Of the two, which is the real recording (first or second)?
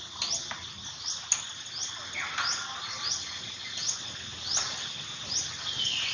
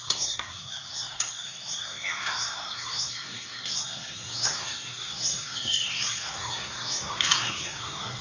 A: first